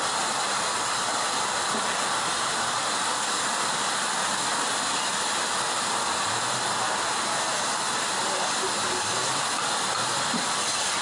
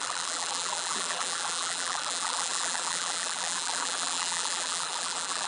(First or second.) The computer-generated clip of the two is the second